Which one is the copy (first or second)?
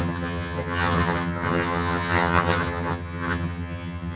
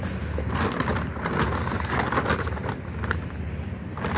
first